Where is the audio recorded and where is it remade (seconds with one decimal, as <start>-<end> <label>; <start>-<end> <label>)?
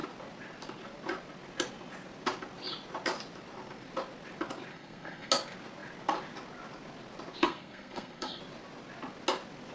0.0-4.7 recorded; 4.7-5.3 remade; 5.3-7.4 recorded; 7.4-8.4 remade; 8.4-9.7 recorded